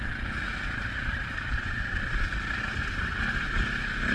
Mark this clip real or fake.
fake